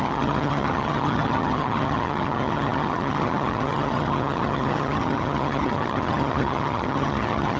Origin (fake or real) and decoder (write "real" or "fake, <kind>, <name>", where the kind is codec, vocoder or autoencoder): fake, vocoder, HiFi-GAN